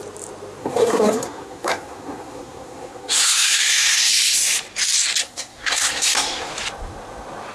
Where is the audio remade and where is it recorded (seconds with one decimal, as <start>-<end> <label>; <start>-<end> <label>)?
0.0-0.6 recorded; 0.6-4.1 remade; 4.1-5.2 recorded; 5.2-6.5 remade; 6.5-7.5 recorded